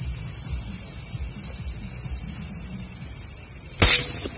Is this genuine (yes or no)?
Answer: yes